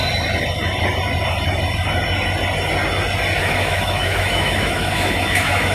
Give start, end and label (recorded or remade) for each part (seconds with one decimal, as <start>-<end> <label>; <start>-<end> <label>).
0.0-3.4 recorded; 3.4-5.7 remade